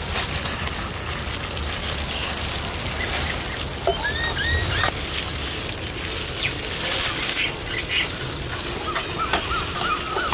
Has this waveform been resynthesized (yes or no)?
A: no